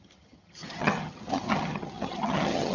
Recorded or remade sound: remade